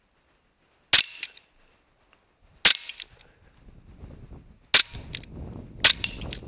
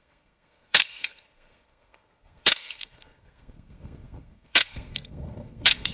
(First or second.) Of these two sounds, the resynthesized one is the second